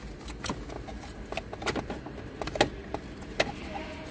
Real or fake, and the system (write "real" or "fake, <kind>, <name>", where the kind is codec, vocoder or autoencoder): real